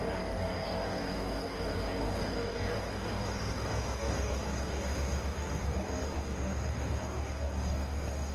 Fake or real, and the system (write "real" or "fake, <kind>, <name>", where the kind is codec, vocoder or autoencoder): fake, codec, DAC